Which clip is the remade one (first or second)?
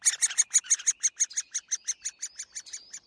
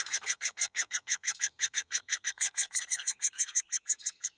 second